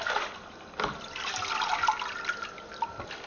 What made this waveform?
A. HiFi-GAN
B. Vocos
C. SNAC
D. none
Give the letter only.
D